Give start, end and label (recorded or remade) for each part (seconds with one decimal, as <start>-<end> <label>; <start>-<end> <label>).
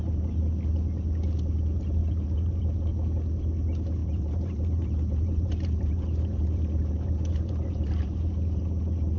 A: 0.0-2.0 recorded; 2.0-2.6 remade; 2.6-4.0 recorded; 4.0-8.3 remade; 8.3-9.2 recorded